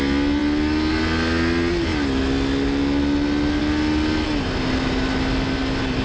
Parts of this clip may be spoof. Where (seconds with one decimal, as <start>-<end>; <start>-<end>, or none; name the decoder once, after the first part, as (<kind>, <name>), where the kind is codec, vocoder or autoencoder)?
none